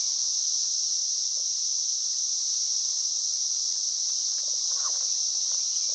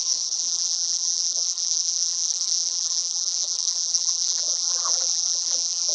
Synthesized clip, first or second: second